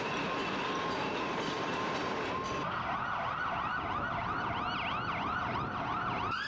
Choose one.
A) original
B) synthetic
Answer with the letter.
A